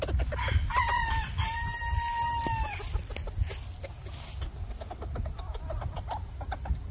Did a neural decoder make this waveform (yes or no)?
no